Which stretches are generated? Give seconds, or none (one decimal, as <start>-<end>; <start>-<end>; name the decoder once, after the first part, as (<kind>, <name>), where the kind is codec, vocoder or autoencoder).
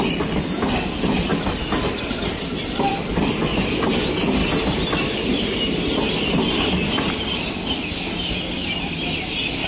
none